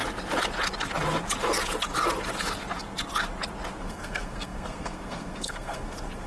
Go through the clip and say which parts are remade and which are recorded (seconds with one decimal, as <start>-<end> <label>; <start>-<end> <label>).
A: 0.0-3.8 recorded; 3.8-6.3 remade